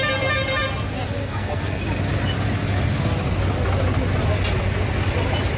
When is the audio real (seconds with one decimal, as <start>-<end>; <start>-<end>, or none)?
0.0-1.2; 1.8-5.6